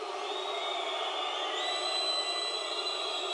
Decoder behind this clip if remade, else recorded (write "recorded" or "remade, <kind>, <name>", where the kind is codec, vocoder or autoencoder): recorded